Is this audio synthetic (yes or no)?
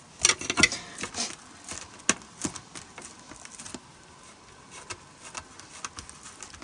no